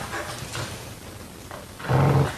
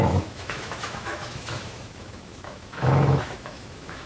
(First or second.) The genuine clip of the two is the first